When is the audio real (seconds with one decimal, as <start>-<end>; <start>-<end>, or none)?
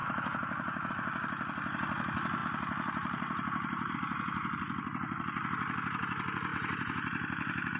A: 0.9-2.4; 3.9-6.5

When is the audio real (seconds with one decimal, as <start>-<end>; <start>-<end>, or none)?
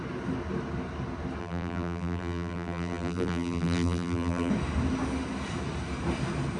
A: 0.0-1.4; 4.5-6.6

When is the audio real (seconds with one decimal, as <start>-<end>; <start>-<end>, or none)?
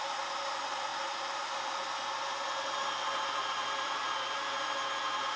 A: 0.0-0.9; 1.7-3.0; 3.9-5.4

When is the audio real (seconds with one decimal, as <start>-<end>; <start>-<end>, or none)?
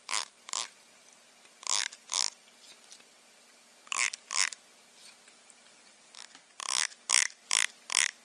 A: 0.0-8.2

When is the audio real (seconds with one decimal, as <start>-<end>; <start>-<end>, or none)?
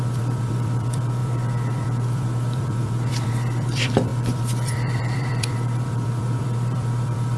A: none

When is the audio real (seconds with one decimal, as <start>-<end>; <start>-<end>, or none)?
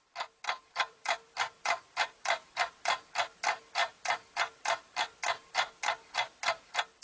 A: 0.0-0.9; 3.0-3.8; 5.2-7.0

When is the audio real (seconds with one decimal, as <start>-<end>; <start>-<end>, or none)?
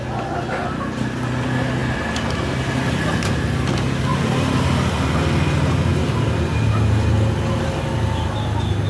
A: 0.0-1.8; 3.3-4.1; 4.6-8.9